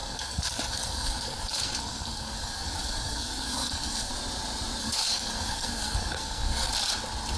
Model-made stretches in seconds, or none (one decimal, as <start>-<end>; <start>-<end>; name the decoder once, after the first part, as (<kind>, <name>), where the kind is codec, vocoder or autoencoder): 0.0-4.1 (codec, SNAC); 4.8-6.7